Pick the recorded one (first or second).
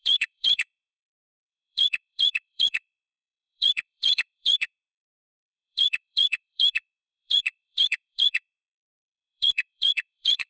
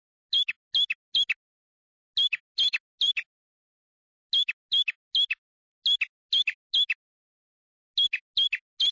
second